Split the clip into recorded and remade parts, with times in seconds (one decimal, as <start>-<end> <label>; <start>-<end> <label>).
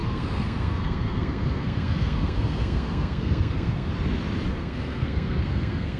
0.0-3.9 remade; 3.9-4.5 recorded; 4.5-6.0 remade